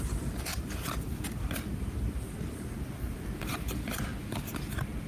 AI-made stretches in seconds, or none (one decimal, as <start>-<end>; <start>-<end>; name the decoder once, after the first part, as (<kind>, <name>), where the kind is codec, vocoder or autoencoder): 0.5-3.4 (vocoder, BigVGAN v2)